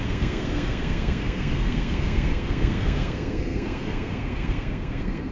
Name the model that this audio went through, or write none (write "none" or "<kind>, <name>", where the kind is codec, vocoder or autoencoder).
codec, SNAC